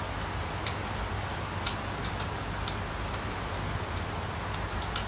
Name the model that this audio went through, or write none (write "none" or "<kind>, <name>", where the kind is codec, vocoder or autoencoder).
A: none